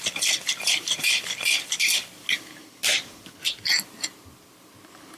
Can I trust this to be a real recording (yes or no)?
yes